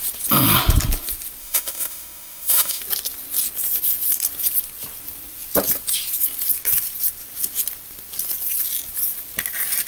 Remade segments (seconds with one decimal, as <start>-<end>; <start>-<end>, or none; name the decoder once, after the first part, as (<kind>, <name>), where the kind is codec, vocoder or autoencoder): 1.4-2.8 (autoencoder, DAC-VAE)